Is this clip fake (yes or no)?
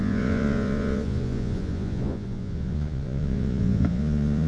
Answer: yes